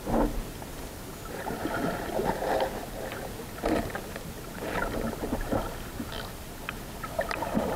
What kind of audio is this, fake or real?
real